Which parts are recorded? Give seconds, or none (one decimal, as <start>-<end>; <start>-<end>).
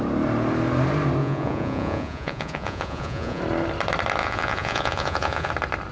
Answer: 0.0-1.2; 3.4-4.2; 5.5-5.9